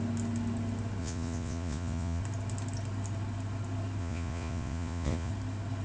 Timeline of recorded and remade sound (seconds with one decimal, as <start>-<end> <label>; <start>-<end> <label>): 0.0-1.0 recorded; 1.0-2.2 remade; 2.2-4.0 recorded; 4.0-5.3 remade; 5.3-5.8 recorded